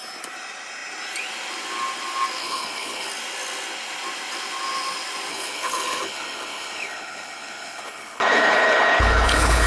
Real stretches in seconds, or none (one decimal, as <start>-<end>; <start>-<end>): 0.0-2.4; 3.1-5.3